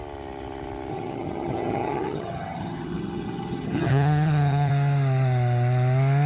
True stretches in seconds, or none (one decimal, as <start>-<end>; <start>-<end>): 0.0-0.9; 4.7-6.3